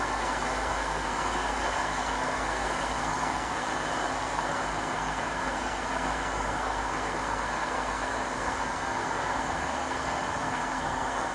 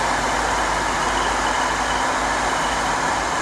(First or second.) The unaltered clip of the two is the second